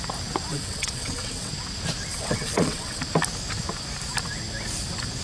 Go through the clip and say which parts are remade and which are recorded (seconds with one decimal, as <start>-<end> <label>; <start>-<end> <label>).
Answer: 0.0-0.5 recorded; 0.5-1.5 remade; 1.5-2.1 recorded; 2.1-3.0 remade; 3.0-5.2 recorded